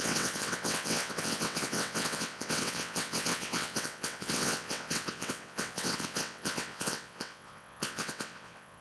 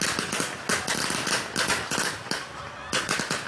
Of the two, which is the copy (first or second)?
first